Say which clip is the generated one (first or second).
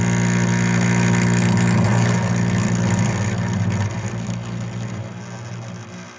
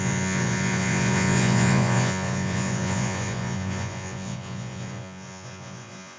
second